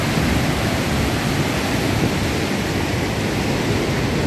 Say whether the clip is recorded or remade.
recorded